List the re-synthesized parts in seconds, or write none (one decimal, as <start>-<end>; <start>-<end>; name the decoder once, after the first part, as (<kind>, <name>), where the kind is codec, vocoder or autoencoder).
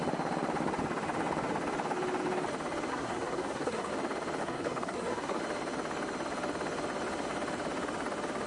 2.9-3.9 (codec, SNAC); 4.4-5.4